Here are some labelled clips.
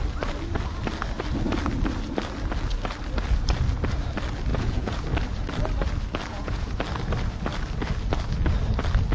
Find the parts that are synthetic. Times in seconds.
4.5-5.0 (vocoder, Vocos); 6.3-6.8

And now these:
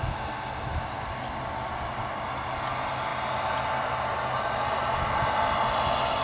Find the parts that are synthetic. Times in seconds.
none

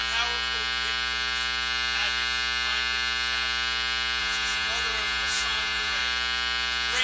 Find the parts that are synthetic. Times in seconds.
4.2-6.0 (vocoder, Vocos)

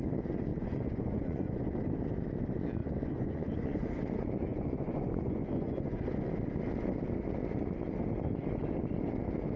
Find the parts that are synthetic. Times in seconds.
0.5-1.8 (vocoder, Vocos); 2.8-3.9; 4.5-6.3

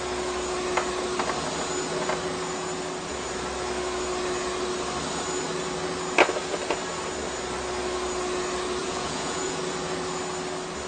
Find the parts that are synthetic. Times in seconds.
8.8-9.6 (vocoder, Vocos)

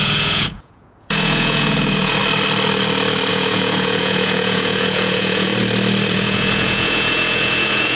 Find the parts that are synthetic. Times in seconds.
0.0-2.2 (vocoder, Vocos); 3.3-5.5; 6.1-7.9

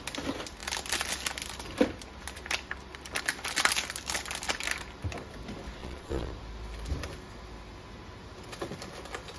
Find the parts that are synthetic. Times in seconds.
5.8-6.3 (vocoder, Vocos)

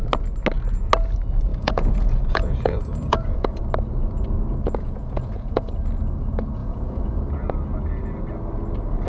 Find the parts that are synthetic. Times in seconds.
1.5-3.6 (vocoder, Vocos); 4.8-5.7; 6.6-7.2